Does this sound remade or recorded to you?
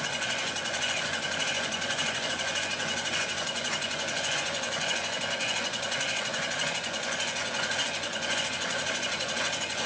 remade